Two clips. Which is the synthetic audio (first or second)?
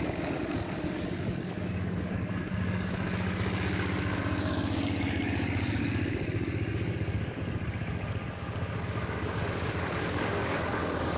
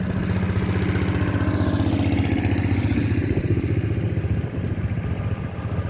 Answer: first